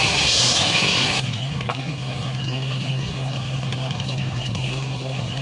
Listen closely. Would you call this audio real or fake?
fake